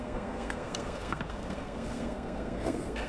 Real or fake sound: fake